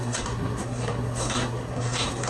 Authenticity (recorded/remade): remade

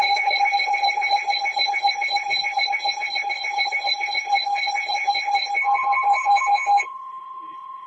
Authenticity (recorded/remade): remade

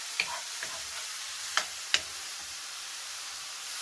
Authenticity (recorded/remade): remade